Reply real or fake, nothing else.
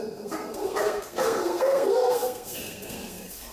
fake